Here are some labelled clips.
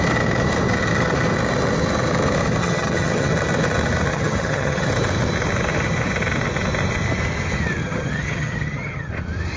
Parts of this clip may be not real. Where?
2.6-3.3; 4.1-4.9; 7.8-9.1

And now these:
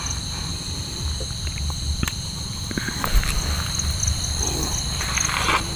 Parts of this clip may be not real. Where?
0.5-3.4

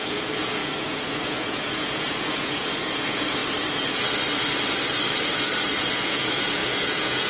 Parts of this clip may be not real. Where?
0.0-3.4; 5.8-7.3

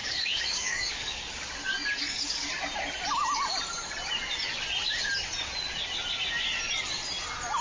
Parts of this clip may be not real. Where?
0.0-1.5; 2.0-2.5

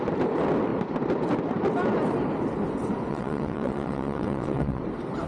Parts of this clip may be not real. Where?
3.1-4.8

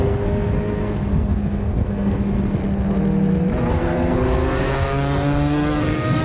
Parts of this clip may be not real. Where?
0.0-2.6; 3.7-6.2